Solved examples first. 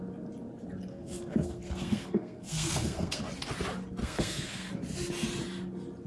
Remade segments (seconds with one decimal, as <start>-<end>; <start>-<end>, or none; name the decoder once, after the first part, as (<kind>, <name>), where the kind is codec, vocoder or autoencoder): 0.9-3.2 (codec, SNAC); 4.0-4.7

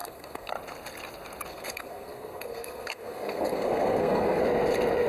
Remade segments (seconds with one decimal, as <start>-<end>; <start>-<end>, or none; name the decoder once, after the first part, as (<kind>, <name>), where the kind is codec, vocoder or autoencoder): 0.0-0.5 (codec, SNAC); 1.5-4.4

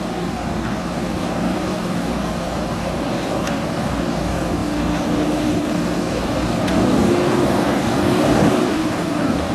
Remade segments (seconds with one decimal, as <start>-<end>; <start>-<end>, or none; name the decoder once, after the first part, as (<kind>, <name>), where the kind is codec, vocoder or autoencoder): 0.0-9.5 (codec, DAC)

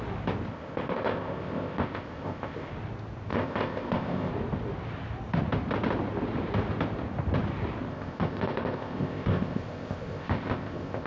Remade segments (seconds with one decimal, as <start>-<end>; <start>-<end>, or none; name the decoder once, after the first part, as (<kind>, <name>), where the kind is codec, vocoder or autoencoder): 0.5-2.7 (codec, ZipCodec); 3.3-4.3; 7.9-11.1

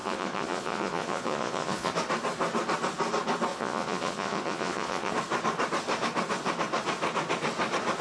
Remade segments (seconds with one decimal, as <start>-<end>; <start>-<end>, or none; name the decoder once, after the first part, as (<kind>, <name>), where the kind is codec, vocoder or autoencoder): 0.0-1.9 (vocoder, Vocos); 3.5-5.1